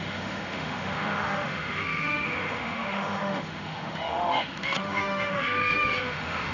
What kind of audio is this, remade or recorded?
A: remade